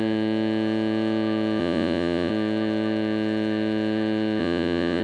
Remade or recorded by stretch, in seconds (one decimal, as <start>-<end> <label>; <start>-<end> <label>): 0.0-1.6 recorded; 1.6-2.3 remade; 2.3-4.4 recorded; 4.4-5.0 remade